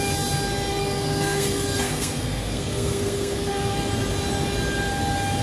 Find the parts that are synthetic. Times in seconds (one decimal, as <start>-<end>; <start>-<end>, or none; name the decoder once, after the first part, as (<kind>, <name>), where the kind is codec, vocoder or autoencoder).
0.7-3.9 (codec, SNAC)